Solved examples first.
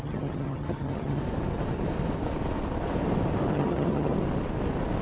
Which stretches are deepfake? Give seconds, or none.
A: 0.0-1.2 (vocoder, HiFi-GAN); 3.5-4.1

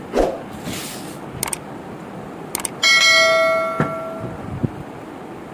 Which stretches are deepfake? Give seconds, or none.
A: none